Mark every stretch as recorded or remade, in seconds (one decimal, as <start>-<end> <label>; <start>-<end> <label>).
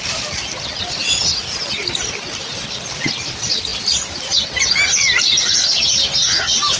0.0-6.8 recorded